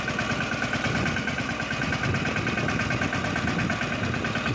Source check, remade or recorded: recorded